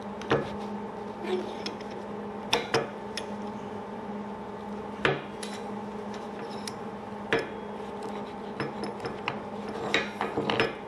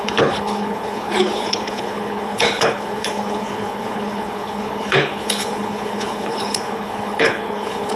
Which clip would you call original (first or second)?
first